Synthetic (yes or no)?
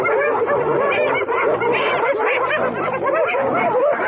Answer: yes